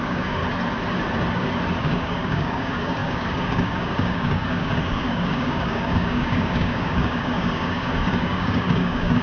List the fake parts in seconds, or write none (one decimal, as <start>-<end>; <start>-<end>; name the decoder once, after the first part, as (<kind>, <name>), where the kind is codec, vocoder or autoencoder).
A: 0.0-0.4 (codec, DAC); 1.8-9.2